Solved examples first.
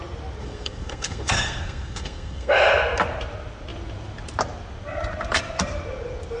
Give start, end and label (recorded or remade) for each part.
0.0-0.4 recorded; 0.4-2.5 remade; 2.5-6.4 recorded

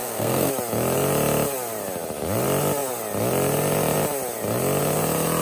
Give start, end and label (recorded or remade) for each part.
0.0-0.5 remade; 0.5-5.4 recorded

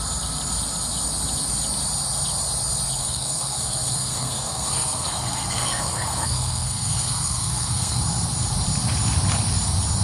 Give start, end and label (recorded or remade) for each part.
0.0-3.0 recorded; 3.0-8.0 remade; 8.0-10.0 recorded

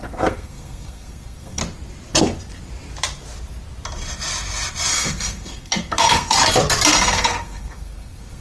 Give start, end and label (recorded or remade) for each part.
0.0-1.6 remade; 1.6-4.9 recorded; 4.9-6.4 remade; 6.4-6.9 recorded; 6.9-8.4 remade

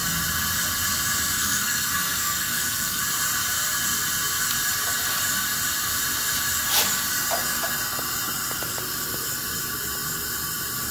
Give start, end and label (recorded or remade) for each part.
0.0-1.4 recorded; 1.4-3.0 remade; 3.0-10.9 recorded